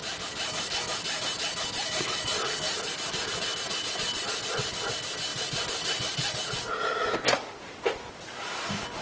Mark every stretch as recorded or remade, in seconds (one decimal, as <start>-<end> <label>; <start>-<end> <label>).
0.0-9.0 recorded